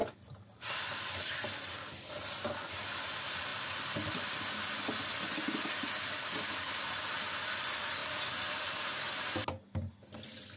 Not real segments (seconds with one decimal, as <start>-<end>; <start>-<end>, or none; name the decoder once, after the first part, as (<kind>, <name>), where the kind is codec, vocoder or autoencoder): 0.0-1.7 (vocoder, BigVGAN v2); 3.5-4.1; 8.0-8.6